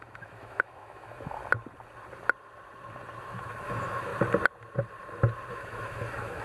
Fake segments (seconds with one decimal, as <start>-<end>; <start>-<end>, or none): 0.0-1.4; 3.2-4.1; 5.5-6.4